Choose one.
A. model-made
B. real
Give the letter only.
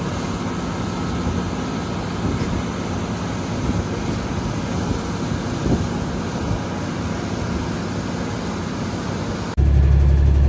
B